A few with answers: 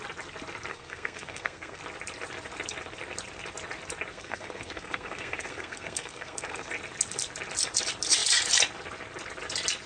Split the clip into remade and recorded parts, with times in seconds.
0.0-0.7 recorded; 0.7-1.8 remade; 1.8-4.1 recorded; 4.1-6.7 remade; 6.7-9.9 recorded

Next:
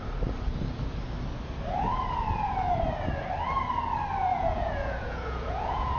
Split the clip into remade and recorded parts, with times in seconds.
0.0-4.3 recorded; 4.3-6.0 remade

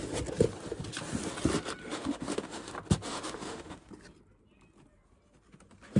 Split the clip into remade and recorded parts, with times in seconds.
0.0-1.8 recorded; 1.8-2.7 remade; 2.7-3.1 recorded; 3.1-3.9 remade; 3.9-6.0 recorded